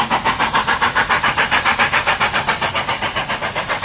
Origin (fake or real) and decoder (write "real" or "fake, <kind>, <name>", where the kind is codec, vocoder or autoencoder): real